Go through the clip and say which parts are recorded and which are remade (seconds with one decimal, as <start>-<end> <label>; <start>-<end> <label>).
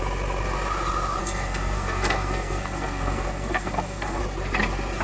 0.0-1.2 recorded; 1.2-4.2 remade; 4.2-5.0 recorded